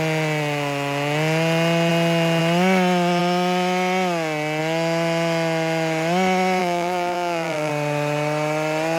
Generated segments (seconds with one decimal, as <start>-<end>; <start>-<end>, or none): 6.6-7.7